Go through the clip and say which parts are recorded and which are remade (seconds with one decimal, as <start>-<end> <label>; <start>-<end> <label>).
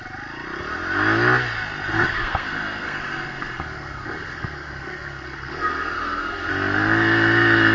0.0-1.9 recorded; 1.9-6.5 remade; 6.5-7.7 recorded